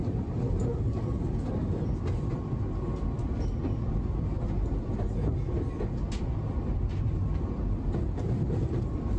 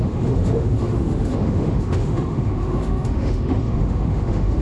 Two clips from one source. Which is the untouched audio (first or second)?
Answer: first